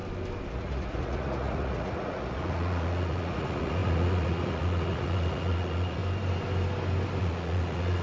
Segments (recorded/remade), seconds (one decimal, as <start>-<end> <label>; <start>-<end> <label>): 0.0-0.5 recorded; 0.5-6.0 remade; 6.0-7.2 recorded; 7.2-8.0 remade